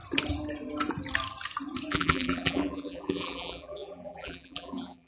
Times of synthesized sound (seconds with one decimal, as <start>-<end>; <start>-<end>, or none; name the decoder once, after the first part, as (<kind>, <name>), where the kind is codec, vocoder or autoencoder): 1.9-5.1 (vocoder, BigVGAN v2)